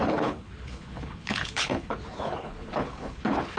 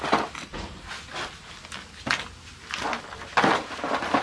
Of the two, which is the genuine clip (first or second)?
second